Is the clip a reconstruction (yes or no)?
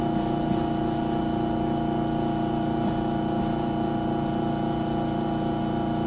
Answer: no